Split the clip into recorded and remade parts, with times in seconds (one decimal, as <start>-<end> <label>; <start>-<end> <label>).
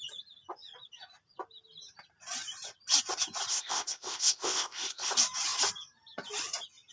0.0-3.5 recorded; 3.5-5.1 remade; 5.1-6.9 recorded